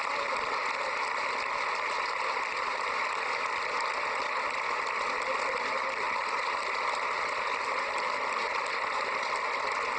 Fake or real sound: real